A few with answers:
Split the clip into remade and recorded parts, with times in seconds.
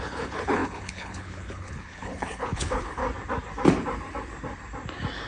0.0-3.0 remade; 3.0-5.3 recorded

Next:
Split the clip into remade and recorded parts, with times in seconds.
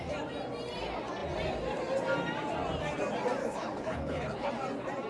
0.0-3.4 recorded; 3.4-4.5 remade; 4.5-5.1 recorded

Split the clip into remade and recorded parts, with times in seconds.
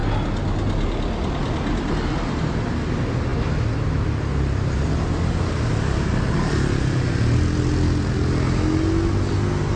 0.0-9.8 recorded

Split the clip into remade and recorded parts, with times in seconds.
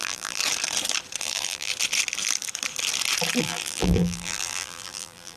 0.0-0.4 remade; 0.4-1.2 recorded; 1.2-1.7 remade; 1.7-3.4 recorded; 3.4-5.4 remade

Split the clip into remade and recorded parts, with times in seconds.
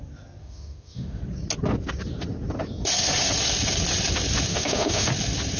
0.0-0.4 recorded; 0.4-1.2 remade; 1.2-4.5 recorded; 4.5-5.1 remade; 5.1-5.6 recorded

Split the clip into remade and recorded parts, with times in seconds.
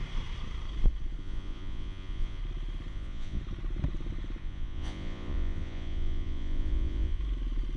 0.0-1.2 recorded; 1.2-2.4 remade; 2.4-2.9 recorded; 2.9-3.4 remade; 3.4-4.4 recorded; 4.4-7.2 remade; 7.2-7.8 recorded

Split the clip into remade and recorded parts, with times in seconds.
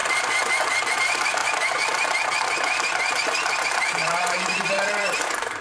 0.0-0.9 recorded; 0.9-1.4 remade; 1.4-3.6 recorded; 3.6-5.6 remade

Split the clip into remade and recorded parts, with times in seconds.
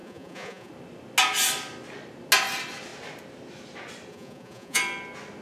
0.0-0.7 remade; 0.7-4.1 recorded; 4.1-4.8 remade; 4.8-5.4 recorded